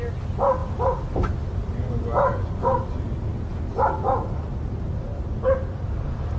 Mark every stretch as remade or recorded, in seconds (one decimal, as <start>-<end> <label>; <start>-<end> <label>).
0.0-6.4 recorded